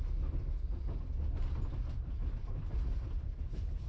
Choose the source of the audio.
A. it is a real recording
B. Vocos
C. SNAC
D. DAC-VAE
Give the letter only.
A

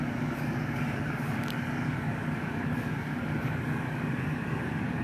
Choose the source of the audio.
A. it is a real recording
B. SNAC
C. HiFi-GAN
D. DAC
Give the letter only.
D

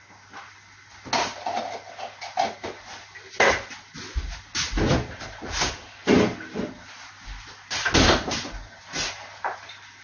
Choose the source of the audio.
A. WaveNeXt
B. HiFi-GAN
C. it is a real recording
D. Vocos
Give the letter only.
C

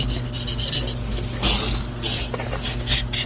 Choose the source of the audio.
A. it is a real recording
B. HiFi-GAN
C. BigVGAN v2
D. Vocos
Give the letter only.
A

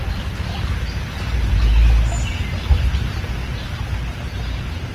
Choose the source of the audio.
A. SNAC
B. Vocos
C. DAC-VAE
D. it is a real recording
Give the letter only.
D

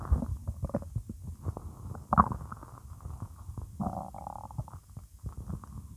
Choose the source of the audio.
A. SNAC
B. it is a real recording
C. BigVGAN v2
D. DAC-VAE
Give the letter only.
B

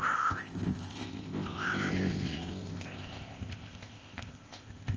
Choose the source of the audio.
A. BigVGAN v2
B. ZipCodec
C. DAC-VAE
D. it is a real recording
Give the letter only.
B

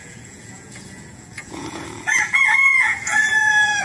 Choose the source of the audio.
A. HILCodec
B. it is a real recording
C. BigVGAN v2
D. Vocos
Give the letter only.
D